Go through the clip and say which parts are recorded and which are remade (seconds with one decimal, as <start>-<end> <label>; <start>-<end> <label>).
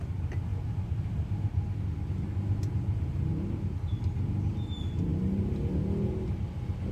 0.0-6.9 recorded